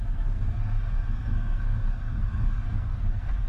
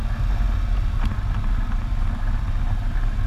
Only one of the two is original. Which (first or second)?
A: second